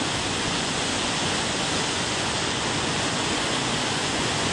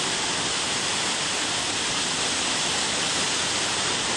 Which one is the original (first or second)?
second